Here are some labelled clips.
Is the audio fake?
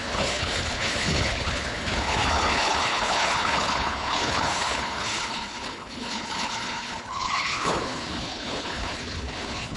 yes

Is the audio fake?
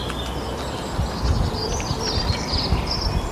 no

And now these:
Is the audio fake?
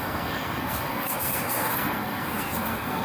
yes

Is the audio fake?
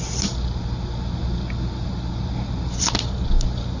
no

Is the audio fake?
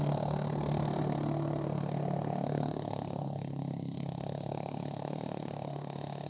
yes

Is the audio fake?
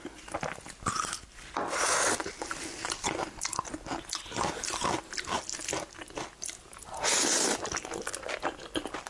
no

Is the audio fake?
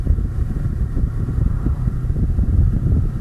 yes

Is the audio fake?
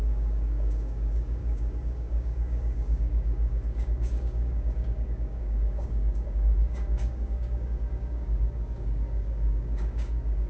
yes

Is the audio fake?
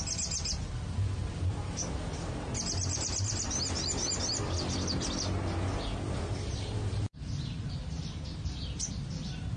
no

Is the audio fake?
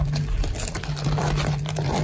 yes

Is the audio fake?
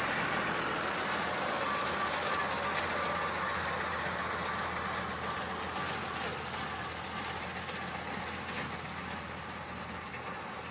no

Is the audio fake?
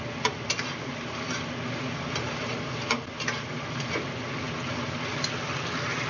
no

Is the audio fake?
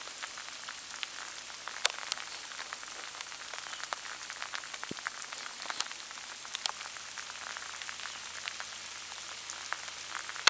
no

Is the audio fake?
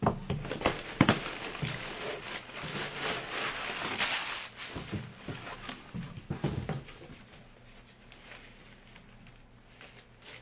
no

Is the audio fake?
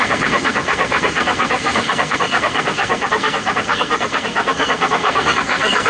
yes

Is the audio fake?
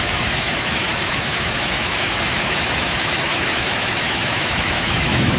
yes